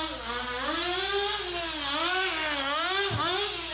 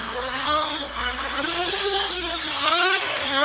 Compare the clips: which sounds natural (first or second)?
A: first